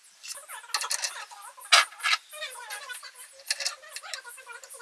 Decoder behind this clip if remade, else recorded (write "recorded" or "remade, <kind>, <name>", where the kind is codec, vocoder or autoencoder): recorded